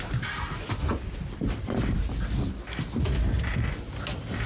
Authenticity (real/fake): real